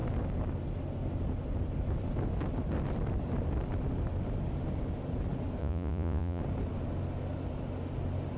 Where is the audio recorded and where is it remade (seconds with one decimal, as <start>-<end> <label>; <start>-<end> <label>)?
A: 0.0-5.6 recorded; 5.6-6.4 remade; 6.4-8.4 recorded